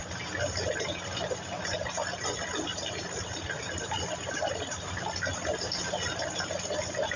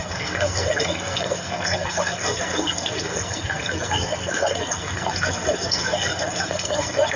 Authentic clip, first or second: first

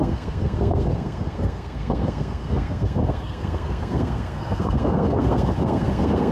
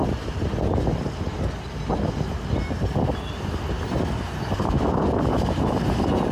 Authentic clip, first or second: second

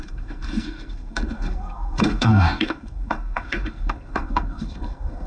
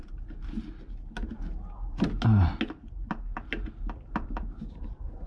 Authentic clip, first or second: second